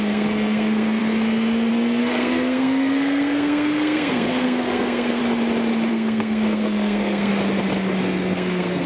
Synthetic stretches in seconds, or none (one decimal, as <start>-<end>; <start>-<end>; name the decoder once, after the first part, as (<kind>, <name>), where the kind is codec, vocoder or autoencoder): 0.0-1.0 (codec, SNAC); 1.7-5.2; 5.9-7.3; 8.0-8.9